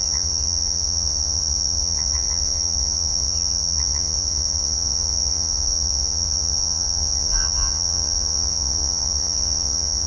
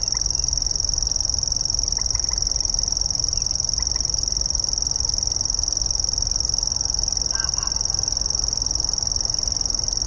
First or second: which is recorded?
second